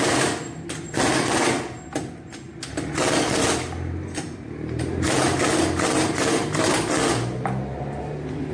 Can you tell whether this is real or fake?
real